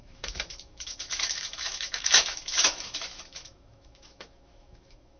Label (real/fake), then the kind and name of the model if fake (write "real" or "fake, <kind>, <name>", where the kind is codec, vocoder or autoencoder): fake, autoencoder, DAC-VAE